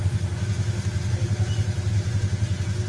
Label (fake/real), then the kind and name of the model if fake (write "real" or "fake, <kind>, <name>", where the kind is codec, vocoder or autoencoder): real